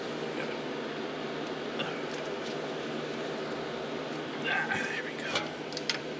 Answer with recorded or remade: recorded